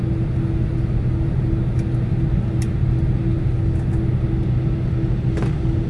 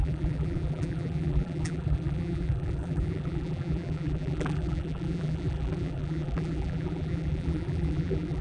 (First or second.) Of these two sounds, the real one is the first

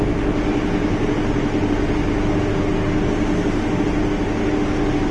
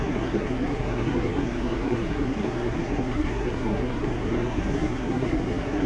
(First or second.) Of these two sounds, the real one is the first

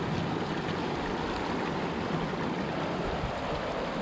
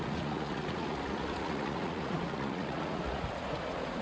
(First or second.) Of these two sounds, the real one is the first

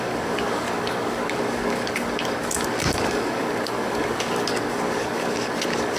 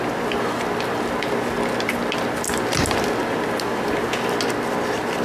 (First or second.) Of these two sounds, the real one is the second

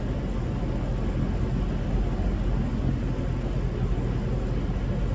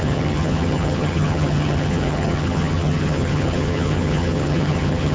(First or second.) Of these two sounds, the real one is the first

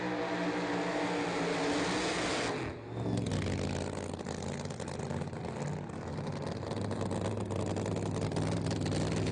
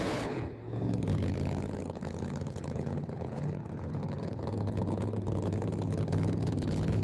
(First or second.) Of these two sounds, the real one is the first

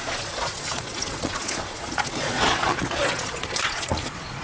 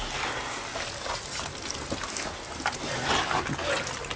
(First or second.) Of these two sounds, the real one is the second